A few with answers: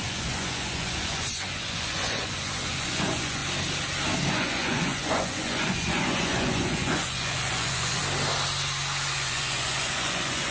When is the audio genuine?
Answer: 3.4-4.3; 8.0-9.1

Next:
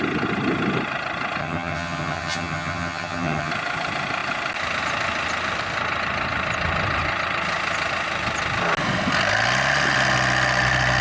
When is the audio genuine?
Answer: 0.0-1.4; 3.5-11.0

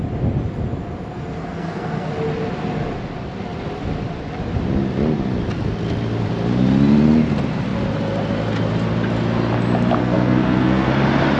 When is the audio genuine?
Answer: 0.0-1.4; 2.1-10.0; 10.9-11.4

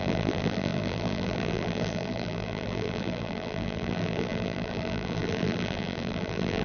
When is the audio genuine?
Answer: none

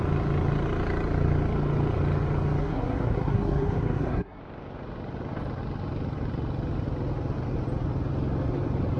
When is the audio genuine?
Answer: 0.0-2.6; 4.4-9.0